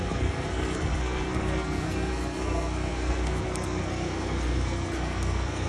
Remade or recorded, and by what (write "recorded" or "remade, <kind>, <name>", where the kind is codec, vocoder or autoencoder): remade, codec, SNAC